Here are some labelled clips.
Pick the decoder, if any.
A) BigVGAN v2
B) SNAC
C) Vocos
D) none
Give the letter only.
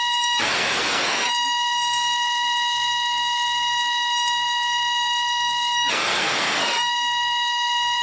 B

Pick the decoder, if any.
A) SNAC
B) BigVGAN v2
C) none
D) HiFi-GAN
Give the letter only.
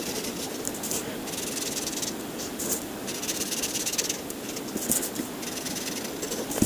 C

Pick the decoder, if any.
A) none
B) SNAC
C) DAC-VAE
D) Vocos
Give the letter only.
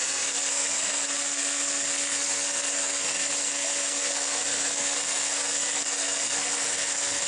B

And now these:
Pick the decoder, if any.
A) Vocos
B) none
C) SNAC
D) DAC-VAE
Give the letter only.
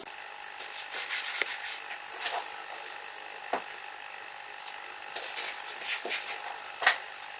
B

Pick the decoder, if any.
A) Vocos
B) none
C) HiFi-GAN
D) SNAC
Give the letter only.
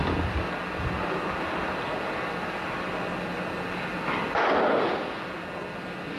B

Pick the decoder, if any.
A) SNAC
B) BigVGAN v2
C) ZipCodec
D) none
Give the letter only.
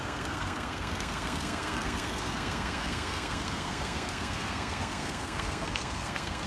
A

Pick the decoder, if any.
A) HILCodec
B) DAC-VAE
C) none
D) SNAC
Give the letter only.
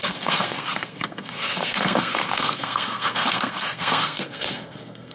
D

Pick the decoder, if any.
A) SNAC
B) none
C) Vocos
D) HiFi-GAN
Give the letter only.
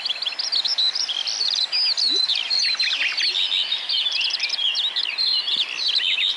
B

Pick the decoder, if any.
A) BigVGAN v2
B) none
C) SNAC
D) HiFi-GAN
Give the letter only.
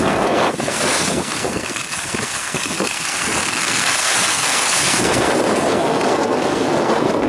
C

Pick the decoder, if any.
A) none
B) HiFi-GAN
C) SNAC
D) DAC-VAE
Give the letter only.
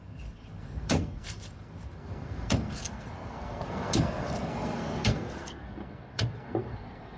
C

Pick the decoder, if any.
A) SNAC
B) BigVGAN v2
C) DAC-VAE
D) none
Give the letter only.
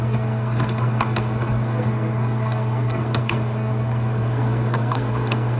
A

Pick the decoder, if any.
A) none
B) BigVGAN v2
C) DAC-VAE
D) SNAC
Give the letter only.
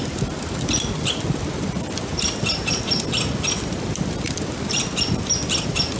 A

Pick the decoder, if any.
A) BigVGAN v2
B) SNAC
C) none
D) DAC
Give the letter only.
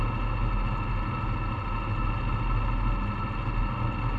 C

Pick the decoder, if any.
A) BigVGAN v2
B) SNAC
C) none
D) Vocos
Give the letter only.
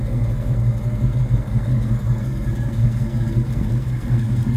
B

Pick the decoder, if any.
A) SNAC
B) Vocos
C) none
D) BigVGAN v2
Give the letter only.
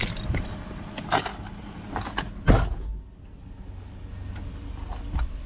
C